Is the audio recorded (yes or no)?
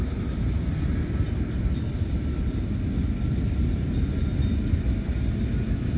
yes